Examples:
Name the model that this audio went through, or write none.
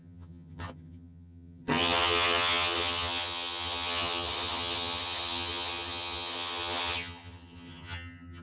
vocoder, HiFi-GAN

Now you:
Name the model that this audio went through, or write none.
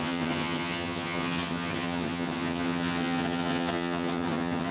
vocoder, HiFi-GAN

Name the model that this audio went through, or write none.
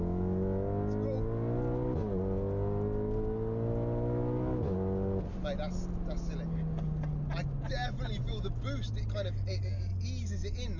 none